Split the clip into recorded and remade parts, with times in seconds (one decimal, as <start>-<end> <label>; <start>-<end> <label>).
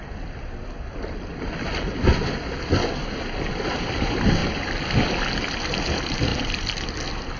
0.0-1.3 remade; 1.3-3.5 recorded; 3.5-4.4 remade; 4.4-5.8 recorded; 5.8-6.3 remade; 6.3-7.4 recorded